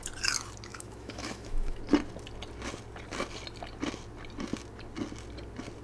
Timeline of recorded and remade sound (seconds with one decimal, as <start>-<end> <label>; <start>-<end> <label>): 0.0-0.7 recorded; 0.7-1.8 remade; 1.8-5.8 recorded